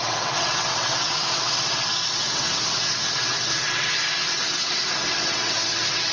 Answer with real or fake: fake